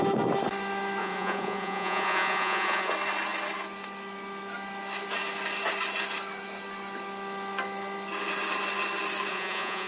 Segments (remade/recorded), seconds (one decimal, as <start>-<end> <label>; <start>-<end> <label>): 0.0-1.0 recorded; 1.0-2.9 remade; 2.9-9.3 recorded; 9.3-9.9 remade